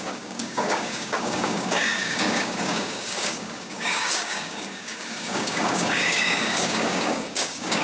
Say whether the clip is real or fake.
fake